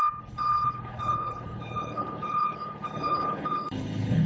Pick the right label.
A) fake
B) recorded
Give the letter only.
A